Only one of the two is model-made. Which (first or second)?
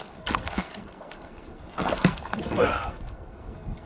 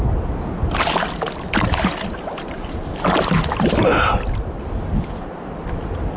first